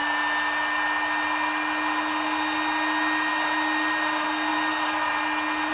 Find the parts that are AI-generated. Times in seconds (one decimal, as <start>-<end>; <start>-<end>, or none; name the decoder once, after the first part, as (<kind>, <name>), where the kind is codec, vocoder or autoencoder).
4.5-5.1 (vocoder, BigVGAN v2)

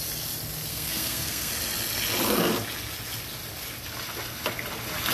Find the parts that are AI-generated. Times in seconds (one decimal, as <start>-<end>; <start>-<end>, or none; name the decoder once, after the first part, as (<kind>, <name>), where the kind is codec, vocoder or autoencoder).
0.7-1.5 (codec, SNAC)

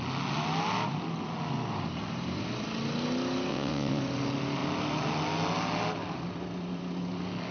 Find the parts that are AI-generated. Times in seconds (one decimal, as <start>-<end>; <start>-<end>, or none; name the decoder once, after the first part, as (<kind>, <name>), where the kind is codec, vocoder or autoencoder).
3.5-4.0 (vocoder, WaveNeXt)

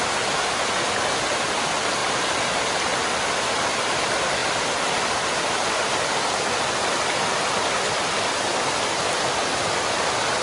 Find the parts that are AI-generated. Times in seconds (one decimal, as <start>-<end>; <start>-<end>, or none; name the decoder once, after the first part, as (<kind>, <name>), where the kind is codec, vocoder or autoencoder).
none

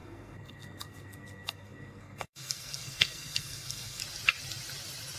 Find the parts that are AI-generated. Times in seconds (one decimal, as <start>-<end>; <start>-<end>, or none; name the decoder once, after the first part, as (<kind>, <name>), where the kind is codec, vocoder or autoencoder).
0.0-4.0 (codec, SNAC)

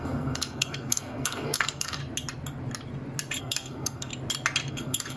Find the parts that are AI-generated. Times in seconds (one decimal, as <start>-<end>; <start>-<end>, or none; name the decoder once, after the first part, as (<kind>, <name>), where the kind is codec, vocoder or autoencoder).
0.0-2.0 (codec, SNAC); 3.4-4.1; 4.7-5.2

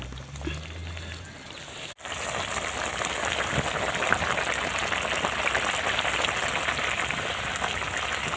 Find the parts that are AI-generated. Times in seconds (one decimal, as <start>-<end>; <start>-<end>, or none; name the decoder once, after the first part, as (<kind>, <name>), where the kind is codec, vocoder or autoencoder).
none

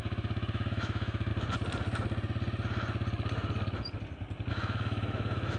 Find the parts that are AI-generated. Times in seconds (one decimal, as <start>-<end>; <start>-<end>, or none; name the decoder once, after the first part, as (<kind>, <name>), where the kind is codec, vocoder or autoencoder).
0.0-1.3 (autoencoder, DAC-VAE); 4.5-5.6